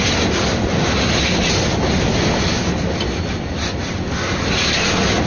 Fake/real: real